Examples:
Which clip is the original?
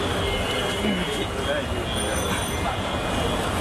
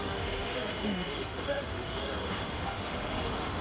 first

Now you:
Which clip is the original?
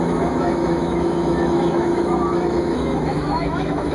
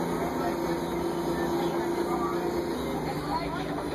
second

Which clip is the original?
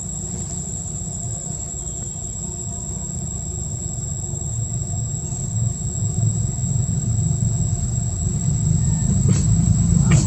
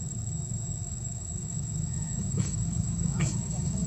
first